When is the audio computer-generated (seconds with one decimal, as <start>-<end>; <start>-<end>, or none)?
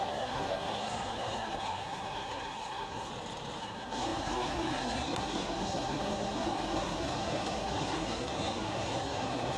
0.0-3.1; 3.6-9.6